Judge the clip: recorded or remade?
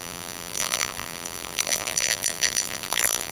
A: remade